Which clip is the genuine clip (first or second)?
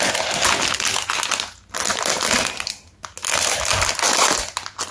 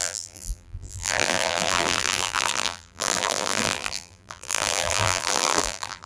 first